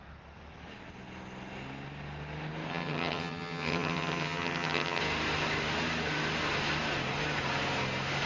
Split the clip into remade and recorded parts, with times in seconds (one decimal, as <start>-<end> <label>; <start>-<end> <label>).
0.0-2.7 recorded; 2.7-5.0 remade; 5.0-8.3 recorded